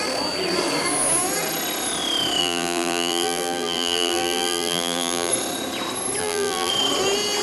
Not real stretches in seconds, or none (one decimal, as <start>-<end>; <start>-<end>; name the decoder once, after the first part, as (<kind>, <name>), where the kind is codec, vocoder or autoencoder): 2.4-5.3 (vocoder, BigVGAN v2); 6.2-6.7